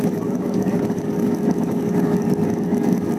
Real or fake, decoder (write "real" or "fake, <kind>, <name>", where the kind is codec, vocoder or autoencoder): fake, codec, DAC